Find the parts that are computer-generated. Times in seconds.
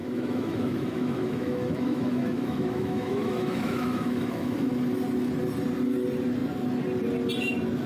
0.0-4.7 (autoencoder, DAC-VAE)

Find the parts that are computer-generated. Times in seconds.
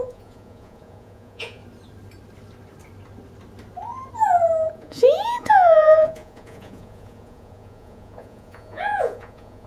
0.0-1.6 (vocoder, Vocos); 4.7-9.7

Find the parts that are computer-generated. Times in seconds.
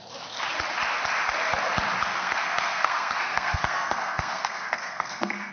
2.1-5.5 (codec, SNAC)